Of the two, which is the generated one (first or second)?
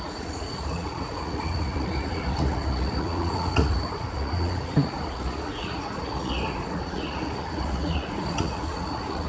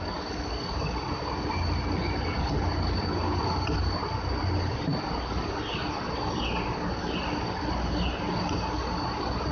first